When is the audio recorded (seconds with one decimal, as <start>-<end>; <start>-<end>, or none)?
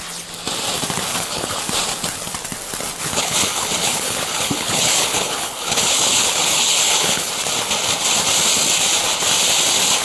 0.0-1.1; 1.6-3.1; 7.3-10.0